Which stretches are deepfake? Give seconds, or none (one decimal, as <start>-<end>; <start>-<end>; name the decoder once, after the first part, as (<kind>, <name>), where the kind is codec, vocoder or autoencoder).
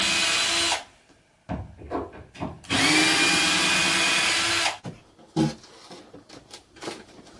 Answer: 6.6-7.4 (vocoder, BigVGAN v2)